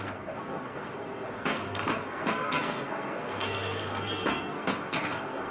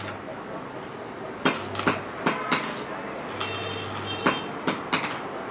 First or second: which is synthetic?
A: first